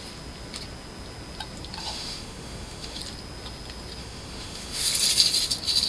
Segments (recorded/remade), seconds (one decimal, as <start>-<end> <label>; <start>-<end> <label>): 0.0-1.8 recorded; 1.8-3.0 remade; 3.0-4.0 recorded; 4.0-4.9 remade; 4.9-5.9 recorded